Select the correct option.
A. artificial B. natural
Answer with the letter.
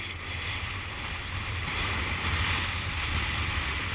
B